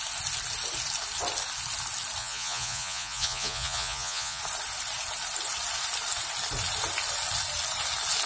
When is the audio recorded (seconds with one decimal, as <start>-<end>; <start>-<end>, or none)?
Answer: 0.0-2.2; 4.4-8.3